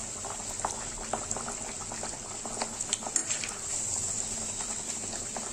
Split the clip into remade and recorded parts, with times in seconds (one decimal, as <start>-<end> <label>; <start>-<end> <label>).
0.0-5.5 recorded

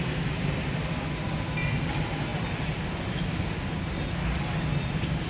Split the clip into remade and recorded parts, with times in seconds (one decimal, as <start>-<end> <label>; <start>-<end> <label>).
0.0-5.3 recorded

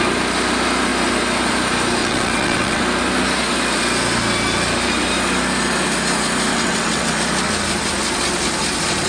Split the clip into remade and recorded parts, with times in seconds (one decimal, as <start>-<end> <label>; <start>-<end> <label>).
0.0-2.0 recorded; 2.0-2.8 remade; 2.8-6.5 recorded; 6.5-7.1 remade; 7.1-9.1 recorded

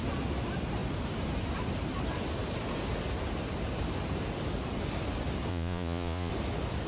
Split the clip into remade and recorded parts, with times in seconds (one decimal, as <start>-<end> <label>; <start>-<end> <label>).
0.0-5.5 recorded; 5.5-6.3 remade; 6.3-6.9 recorded

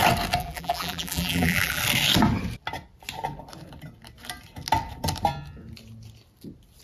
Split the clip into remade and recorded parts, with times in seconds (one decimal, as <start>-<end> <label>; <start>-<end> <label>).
0.0-0.4 recorded; 0.4-1.8 remade; 1.8-6.8 recorded

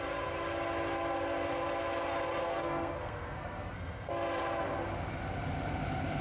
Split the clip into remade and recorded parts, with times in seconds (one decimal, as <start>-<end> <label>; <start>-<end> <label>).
0.0-2.4 recorded; 2.4-4.1 remade; 4.1-6.2 recorded

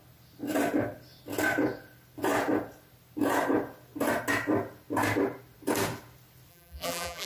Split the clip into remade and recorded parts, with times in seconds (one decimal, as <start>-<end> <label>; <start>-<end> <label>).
0.0-6.5 recorded; 6.5-7.3 remade